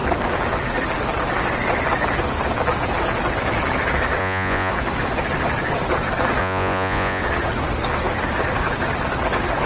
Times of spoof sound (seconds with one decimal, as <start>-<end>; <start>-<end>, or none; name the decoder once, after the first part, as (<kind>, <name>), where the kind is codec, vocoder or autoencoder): 4.2-4.7 (vocoder, Vocos); 6.4-7.2